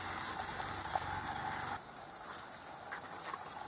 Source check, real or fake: real